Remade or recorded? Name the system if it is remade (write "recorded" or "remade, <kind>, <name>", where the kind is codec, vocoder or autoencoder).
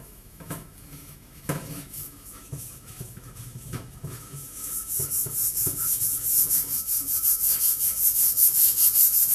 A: remade, autoencoder, DAC-VAE